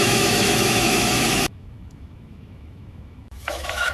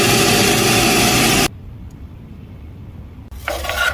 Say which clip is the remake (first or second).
first